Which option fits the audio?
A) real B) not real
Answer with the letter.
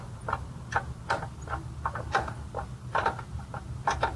A